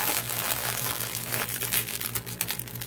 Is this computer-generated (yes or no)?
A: yes